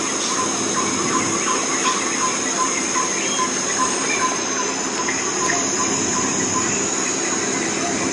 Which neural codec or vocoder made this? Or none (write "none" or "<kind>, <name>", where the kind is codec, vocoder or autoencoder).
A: none